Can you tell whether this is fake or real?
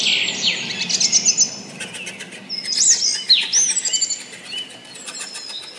real